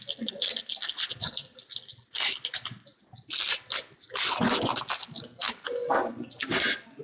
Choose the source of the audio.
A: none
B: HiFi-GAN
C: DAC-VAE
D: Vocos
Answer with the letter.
A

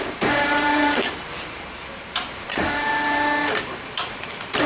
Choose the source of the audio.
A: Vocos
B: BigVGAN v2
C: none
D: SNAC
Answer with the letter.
B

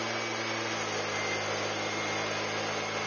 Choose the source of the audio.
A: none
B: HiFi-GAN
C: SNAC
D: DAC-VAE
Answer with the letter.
A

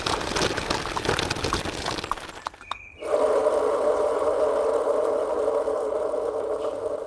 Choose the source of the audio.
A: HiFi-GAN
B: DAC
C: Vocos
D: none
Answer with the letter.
D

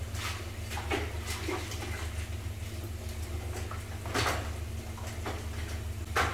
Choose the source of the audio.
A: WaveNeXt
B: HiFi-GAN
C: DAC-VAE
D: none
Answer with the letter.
D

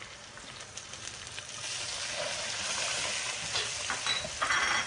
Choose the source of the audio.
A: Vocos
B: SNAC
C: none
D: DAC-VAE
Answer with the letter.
C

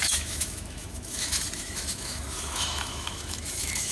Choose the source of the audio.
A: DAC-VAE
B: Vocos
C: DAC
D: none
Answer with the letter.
A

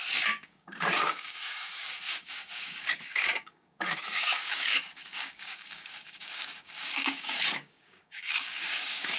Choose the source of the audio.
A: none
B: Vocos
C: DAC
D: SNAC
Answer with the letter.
C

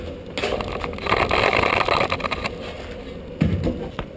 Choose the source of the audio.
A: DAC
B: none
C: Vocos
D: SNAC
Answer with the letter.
B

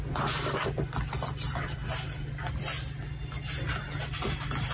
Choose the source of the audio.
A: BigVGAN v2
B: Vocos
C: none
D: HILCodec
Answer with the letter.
C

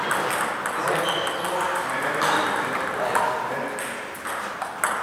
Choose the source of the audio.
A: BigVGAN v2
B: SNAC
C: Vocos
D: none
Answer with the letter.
D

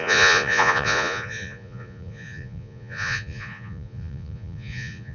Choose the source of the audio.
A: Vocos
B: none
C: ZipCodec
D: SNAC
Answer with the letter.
A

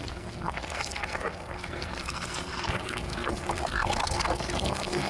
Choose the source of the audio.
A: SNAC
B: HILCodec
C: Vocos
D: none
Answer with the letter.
A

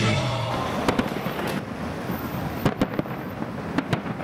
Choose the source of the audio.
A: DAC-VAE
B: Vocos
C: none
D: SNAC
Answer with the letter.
C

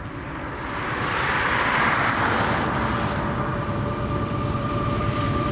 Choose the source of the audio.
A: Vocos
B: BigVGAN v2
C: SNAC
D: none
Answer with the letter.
B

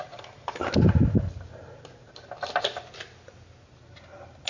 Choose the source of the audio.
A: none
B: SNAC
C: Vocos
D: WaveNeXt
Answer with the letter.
A